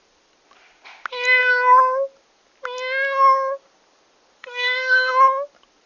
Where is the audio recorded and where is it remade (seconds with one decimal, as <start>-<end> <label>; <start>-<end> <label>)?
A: 0.0-4.4 recorded; 4.4-5.1 remade; 5.1-5.9 recorded